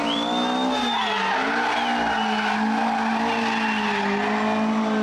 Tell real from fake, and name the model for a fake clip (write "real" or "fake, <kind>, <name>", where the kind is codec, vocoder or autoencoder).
real